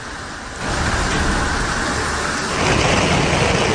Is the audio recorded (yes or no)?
yes